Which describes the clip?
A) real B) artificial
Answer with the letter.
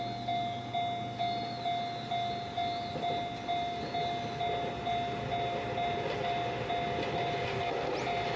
A